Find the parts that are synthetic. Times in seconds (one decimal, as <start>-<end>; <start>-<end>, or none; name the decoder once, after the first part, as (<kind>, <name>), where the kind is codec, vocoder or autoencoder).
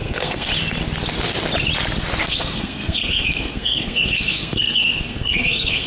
0.0-0.5 (codec, SNAC); 2.2-5.9